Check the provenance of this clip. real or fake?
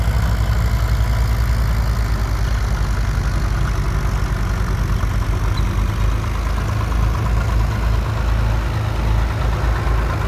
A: real